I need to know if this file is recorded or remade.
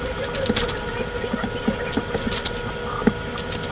recorded